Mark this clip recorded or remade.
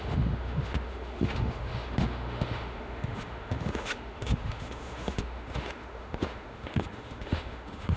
remade